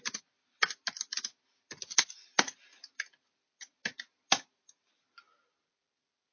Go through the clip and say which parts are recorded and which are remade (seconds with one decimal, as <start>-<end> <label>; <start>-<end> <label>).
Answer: 0.0-6.3 recorded

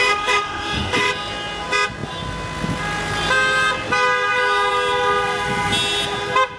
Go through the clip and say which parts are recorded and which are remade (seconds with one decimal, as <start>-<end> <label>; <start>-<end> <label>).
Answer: 0.0-1.1 remade; 1.1-6.6 recorded

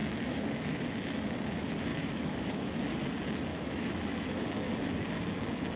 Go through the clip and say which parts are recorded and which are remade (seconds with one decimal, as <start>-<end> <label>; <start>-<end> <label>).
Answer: 0.0-0.9 remade; 0.9-1.9 recorded; 1.9-2.8 remade; 2.8-3.5 recorded; 3.5-4.5 remade; 4.5-5.8 recorded

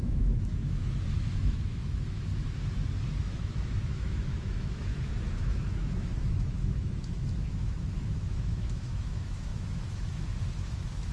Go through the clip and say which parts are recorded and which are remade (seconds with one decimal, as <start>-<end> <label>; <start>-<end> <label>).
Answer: 0.0-2.3 remade; 2.3-3.2 recorded; 3.2-11.1 remade